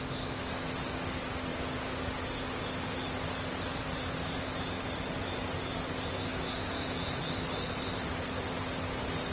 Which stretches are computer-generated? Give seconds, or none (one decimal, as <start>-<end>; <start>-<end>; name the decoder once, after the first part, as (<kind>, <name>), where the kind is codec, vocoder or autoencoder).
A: 6.3-7.2 (vocoder, Vocos)

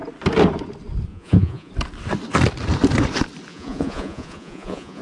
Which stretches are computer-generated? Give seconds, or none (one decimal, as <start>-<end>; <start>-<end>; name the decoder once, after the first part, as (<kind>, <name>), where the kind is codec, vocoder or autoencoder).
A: 1.1-1.7 (vocoder, Vocos); 3.5-5.0